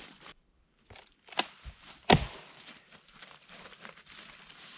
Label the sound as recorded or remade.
remade